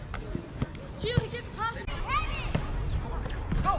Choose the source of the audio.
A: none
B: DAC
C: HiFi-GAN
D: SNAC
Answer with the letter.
A